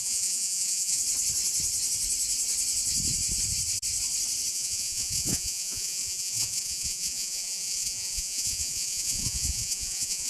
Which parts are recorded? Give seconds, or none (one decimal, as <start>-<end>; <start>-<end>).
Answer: 1.0-4.5